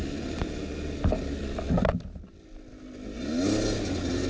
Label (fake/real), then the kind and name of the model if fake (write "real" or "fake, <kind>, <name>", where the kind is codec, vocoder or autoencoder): real